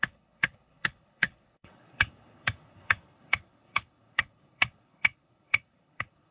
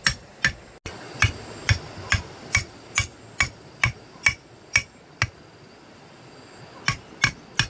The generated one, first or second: first